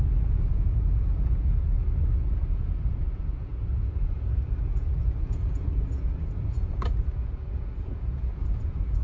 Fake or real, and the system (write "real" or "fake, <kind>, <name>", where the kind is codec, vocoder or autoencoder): fake, vocoder, Vocos